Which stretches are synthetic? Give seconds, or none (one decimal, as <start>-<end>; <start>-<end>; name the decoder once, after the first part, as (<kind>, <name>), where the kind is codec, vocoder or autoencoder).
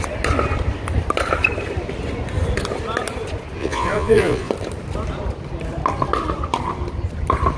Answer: 3.6-4.5 (vocoder, Vocos)